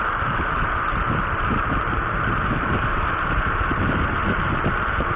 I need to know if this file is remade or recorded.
remade